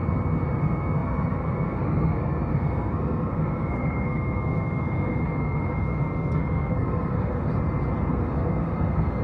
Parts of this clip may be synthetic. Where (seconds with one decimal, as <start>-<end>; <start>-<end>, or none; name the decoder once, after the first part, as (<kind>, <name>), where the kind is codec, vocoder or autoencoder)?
0.6-7.5 (codec, SNAC); 8.1-9.2